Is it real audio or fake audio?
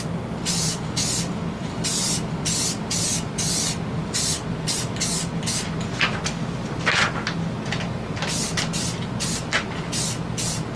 real